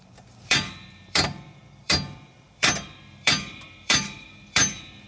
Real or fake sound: fake